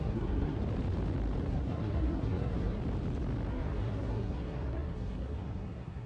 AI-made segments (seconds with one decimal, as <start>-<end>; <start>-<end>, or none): 0.0-0.6; 1.4-2.8; 3.5-6.1